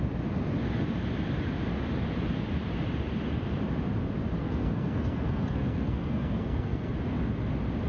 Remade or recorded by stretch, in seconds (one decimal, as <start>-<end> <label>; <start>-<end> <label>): 0.0-4.4 recorded; 4.4-6.9 remade; 6.9-7.9 recorded